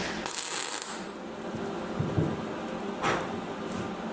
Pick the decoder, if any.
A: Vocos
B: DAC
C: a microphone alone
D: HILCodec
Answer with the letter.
C